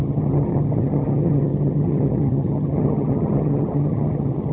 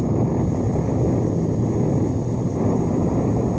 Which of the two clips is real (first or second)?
second